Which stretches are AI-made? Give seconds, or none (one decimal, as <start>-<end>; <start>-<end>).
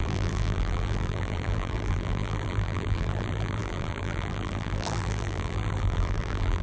0.0-6.6